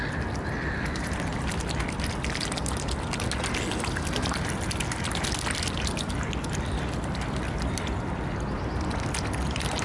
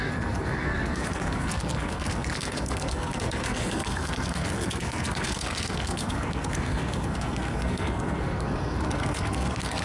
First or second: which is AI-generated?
second